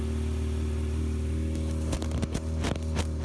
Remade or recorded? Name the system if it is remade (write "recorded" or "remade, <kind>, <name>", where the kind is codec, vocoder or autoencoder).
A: recorded